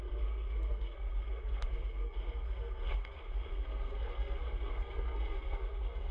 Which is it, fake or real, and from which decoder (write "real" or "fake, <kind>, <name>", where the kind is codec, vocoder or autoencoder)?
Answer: fake, codec, SNAC